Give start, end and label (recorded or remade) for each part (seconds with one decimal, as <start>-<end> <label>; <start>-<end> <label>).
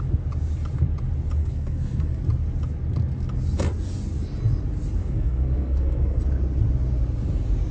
0.0-1.4 recorded; 1.4-2.2 remade; 2.2-5.0 recorded; 5.0-6.2 remade; 6.2-7.7 recorded